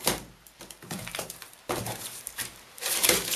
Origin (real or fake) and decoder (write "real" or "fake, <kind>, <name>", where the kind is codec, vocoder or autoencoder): fake, vocoder, BigVGAN v2